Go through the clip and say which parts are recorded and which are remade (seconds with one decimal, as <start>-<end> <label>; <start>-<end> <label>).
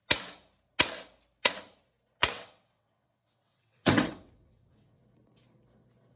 0.0-2.2 recorded; 2.2-5.0 remade; 5.0-6.2 recorded